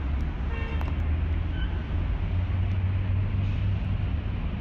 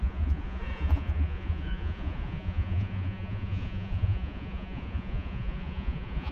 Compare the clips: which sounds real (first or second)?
first